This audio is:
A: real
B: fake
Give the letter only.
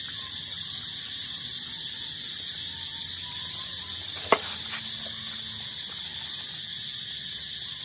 A